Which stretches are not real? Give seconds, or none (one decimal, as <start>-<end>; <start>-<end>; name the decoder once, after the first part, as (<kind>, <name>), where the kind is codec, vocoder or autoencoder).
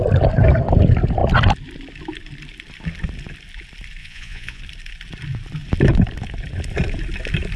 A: 4.0-4.6 (vocoder, Vocos)